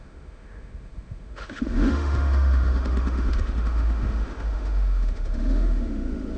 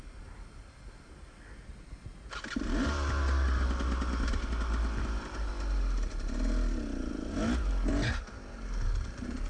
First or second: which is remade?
first